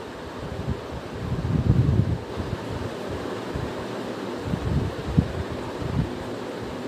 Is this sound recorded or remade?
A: remade